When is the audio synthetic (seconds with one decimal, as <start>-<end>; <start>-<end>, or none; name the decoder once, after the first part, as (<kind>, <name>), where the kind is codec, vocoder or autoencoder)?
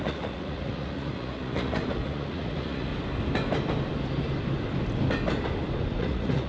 0.0-2.9 (vocoder, Vocos); 6.0-6.5